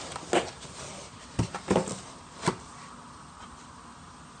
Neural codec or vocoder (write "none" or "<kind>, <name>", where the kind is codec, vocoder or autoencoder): none